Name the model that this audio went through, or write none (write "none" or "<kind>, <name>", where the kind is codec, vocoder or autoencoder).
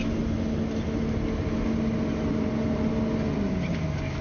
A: none